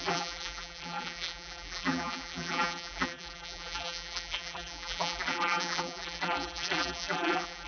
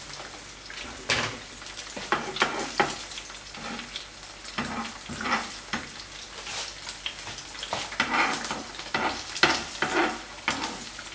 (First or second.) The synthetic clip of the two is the first